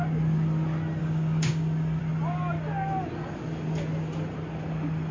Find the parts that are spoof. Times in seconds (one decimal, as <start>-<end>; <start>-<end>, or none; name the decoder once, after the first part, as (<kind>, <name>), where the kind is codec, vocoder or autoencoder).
1.0-2.0 (codec, DAC)